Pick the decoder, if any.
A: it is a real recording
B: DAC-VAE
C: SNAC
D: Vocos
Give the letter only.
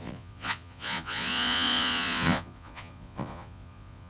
D